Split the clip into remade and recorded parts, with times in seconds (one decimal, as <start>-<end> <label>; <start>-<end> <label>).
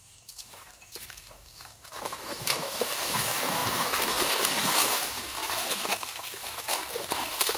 0.0-7.6 remade